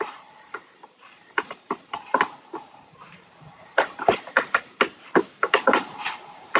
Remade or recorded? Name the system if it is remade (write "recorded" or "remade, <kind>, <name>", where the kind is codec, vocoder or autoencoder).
remade, vocoder, BigVGAN v2